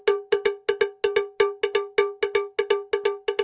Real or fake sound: real